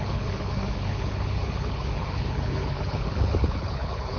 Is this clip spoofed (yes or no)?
yes